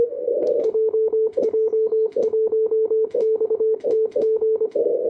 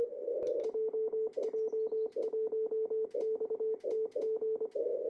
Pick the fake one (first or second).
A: first